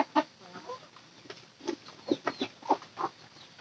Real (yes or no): yes